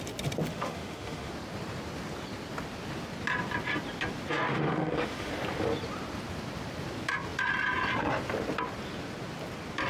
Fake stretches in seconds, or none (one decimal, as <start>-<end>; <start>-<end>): 0.5-1.3; 4.5-5.3